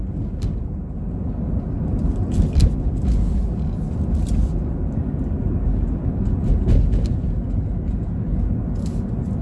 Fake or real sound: real